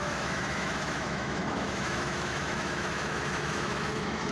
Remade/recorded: remade